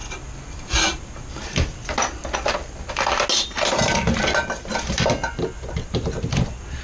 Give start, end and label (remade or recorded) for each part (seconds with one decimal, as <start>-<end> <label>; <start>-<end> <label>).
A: 0.0-6.8 recorded